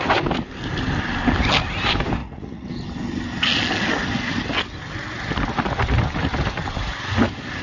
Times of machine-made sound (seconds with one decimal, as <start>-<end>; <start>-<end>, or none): 2.2-2.7